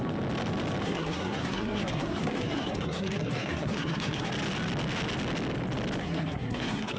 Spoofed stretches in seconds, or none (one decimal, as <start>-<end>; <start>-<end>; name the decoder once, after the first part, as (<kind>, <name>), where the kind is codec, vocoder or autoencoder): 0.8-4.3 (codec, SNAC); 6.0-7.0